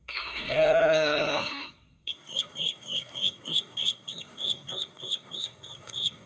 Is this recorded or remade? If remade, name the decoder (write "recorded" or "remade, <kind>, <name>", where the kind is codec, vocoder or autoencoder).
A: remade, codec, SNAC